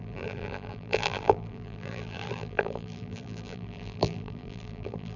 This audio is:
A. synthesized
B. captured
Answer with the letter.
A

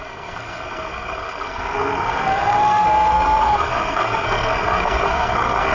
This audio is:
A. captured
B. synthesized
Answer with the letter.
B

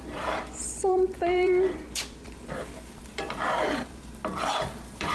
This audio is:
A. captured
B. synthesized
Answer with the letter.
B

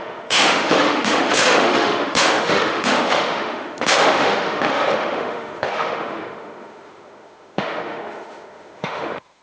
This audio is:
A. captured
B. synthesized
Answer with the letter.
B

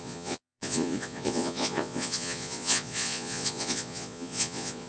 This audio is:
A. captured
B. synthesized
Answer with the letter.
B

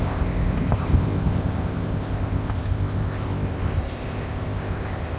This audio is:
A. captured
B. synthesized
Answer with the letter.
B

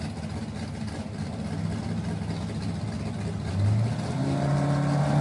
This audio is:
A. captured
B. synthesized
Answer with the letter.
A